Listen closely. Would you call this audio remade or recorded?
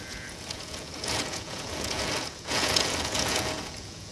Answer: remade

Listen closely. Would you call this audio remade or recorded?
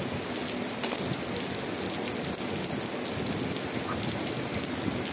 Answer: recorded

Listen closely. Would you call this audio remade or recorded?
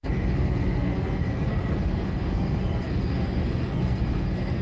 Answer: remade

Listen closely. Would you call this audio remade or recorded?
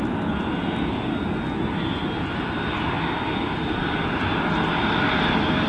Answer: recorded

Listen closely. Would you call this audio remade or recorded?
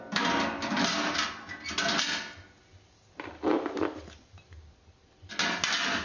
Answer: recorded